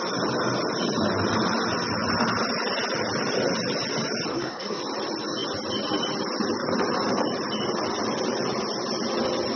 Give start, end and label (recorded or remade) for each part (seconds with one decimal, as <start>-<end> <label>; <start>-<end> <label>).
0.0-4.3 recorded; 4.3-4.8 remade; 4.8-9.6 recorded